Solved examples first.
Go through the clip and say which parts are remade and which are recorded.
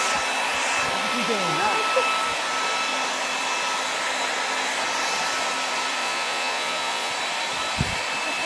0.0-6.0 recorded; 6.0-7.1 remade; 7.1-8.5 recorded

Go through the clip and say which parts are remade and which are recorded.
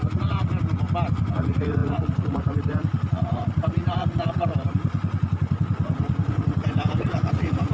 0.0-0.5 remade; 0.5-1.3 recorded; 1.3-7.7 remade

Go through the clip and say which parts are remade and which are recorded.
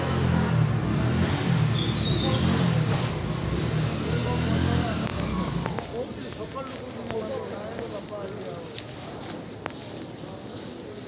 0.0-11.1 recorded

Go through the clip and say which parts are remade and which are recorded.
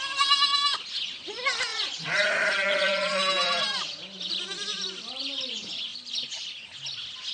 0.0-1.7 recorded; 1.7-3.2 remade; 3.2-7.3 recorded